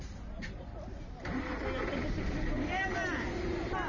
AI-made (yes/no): no